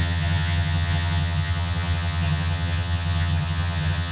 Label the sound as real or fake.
fake